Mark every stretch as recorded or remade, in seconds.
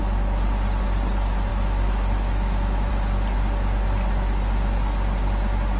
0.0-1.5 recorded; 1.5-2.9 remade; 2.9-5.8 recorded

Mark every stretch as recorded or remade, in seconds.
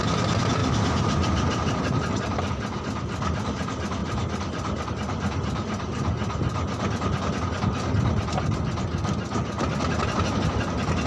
0.0-0.6 recorded; 0.6-2.5 remade; 2.5-4.0 recorded; 4.0-4.9 remade; 4.9-11.1 recorded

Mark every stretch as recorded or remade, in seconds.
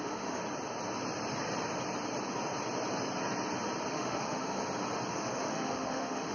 0.0-0.4 remade; 0.4-3.9 recorded; 3.9-4.6 remade; 4.6-5.1 recorded; 5.1-6.3 remade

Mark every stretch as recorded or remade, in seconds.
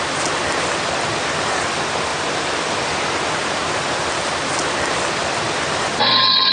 0.0-6.5 recorded